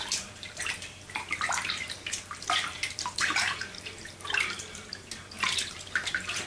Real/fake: fake